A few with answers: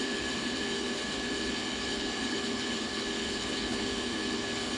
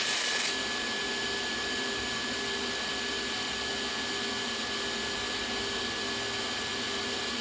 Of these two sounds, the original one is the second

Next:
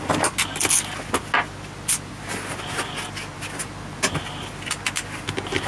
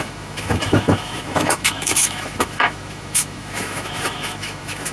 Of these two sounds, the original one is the first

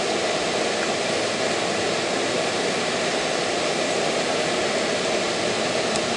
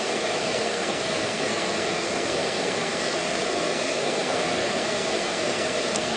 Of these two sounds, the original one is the first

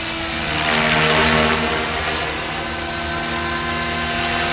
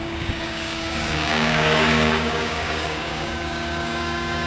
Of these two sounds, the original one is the first